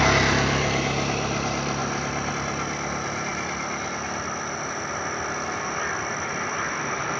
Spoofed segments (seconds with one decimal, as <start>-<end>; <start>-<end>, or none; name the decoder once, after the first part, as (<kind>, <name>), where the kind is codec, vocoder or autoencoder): none